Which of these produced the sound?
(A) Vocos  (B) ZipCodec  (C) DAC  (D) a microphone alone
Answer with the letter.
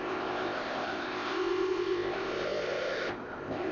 B